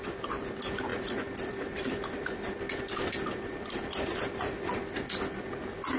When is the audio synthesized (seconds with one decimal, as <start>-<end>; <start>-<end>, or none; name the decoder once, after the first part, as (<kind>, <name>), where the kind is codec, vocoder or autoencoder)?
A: none